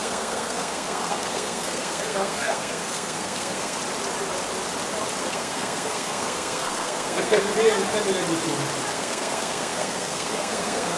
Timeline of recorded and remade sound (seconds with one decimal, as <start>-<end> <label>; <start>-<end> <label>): 0.0-3.8 remade; 3.8-5.2 recorded; 5.2-7.5 remade; 7.5-8.9 recorded; 8.9-11.0 remade

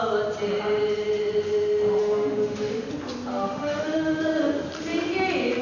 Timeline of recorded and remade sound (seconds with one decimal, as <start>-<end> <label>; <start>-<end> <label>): 0.0-2.0 recorded; 2.0-2.9 remade; 2.9-3.3 recorded; 3.3-4.2 remade; 4.2-5.6 recorded